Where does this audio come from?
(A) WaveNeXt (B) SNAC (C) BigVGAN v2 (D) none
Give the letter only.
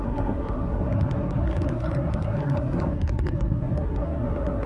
B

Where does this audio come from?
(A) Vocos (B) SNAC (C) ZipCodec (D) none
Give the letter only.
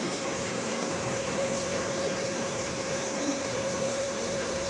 B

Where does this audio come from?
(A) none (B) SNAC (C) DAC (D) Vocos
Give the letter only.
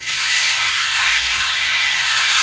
B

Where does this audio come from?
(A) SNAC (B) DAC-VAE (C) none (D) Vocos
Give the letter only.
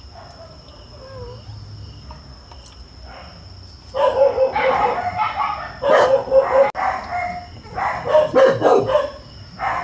C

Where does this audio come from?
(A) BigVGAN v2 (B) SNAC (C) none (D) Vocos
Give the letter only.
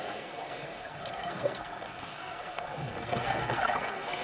B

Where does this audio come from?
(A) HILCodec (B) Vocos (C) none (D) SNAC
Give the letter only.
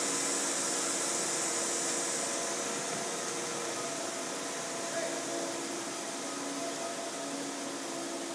C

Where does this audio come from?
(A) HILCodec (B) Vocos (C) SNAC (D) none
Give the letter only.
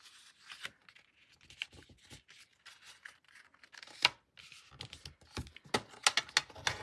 D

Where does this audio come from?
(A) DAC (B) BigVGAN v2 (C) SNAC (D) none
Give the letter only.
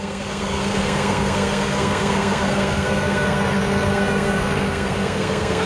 C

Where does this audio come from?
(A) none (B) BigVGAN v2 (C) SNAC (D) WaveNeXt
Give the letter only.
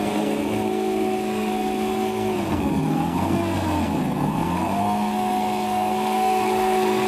C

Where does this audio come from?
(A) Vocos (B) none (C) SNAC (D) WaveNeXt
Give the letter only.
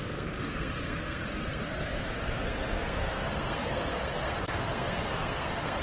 C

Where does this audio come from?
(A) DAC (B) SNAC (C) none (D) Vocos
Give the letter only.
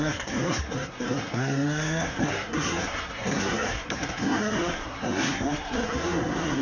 B